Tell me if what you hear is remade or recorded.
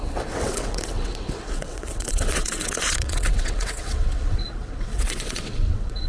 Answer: remade